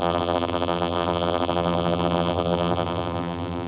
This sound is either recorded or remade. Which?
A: remade